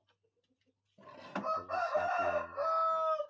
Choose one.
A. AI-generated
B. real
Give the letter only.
B